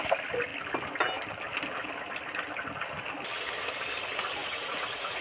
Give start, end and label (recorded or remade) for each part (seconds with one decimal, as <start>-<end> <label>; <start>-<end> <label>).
0.0-4.4 recorded; 4.4-5.2 remade